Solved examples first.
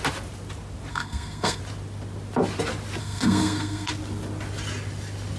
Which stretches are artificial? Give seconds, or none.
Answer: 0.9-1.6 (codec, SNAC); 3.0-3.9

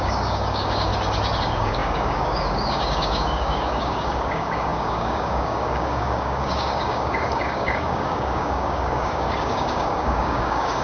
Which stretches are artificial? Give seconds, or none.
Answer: 0.0-0.9 (codec, DAC); 1.4-10.8